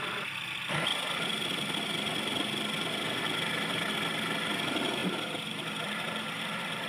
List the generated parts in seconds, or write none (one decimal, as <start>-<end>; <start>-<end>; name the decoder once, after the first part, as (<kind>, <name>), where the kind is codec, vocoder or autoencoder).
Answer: 5.0-6.4 (vocoder, BigVGAN v2)